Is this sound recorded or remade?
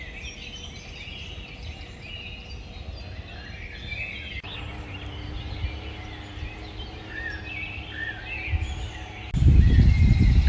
recorded